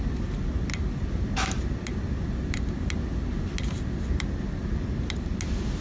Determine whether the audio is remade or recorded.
recorded